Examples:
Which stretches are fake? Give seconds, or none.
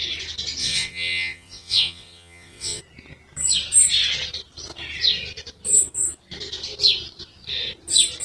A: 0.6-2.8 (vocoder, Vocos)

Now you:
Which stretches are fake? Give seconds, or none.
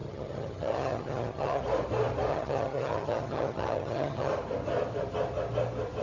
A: 0.0-1.6 (vocoder, HiFi-GAN); 2.3-4.3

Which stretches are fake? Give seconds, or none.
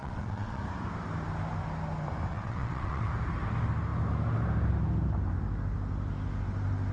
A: 0.0-0.6 (vocoder, WaveNeXt); 2.3-3.1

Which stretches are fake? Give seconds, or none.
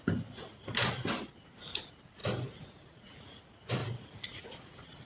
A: 2.2-3.4 (vocoder, Vocos); 3.8-5.0